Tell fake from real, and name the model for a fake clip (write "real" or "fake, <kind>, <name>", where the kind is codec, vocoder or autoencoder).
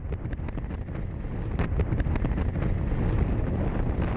real